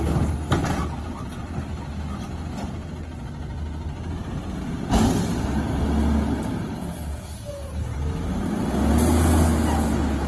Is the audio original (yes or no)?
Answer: yes